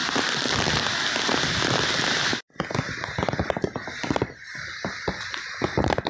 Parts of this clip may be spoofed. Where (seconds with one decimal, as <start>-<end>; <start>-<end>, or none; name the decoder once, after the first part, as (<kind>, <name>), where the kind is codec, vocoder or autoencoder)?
1.2-2.3 (vocoder, BigVGAN v2)